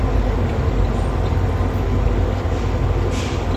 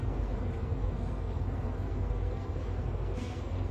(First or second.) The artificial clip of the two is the second